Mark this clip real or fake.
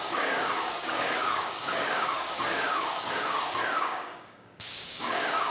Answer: fake